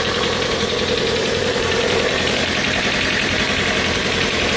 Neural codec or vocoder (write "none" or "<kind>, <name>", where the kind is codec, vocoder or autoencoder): vocoder, BigVGAN v2